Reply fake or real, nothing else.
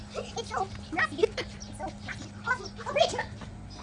real